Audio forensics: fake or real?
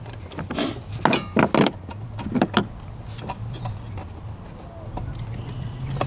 real